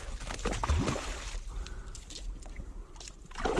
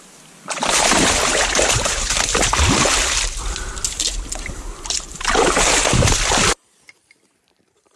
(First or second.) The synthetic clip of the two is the second